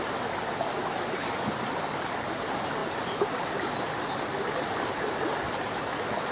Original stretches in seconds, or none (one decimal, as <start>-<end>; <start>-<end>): 0.0-6.3